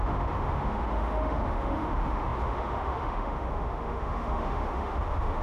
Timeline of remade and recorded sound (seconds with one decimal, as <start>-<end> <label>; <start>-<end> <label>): 0.0-5.4 remade